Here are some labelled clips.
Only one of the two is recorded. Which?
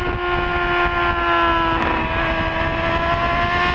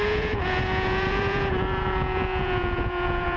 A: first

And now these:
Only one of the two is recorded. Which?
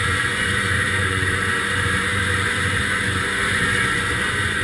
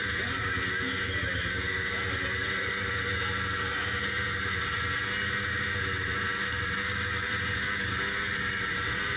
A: second